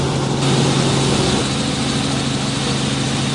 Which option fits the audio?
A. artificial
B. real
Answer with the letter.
B